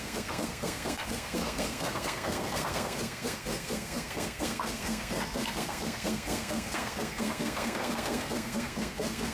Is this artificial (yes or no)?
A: yes